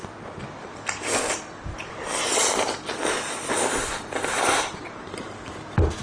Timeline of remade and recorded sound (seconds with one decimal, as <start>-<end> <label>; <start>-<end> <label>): 0.0-3.5 remade; 3.5-6.0 recorded